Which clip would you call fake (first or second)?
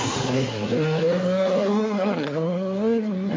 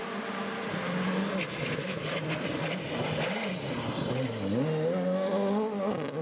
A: first